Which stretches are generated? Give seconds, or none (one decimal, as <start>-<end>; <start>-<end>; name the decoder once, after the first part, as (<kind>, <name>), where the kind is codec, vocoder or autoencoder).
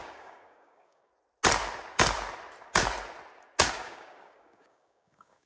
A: 0.0-1.1 (codec, DAC); 3.7-5.5